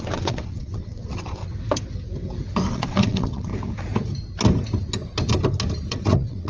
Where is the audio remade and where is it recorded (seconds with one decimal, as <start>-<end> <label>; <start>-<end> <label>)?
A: 0.0-1.4 remade; 1.4-2.7 recorded; 2.7-3.5 remade; 3.5-5.9 recorded; 5.9-6.5 remade